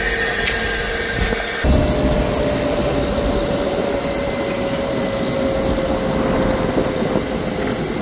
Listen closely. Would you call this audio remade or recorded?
recorded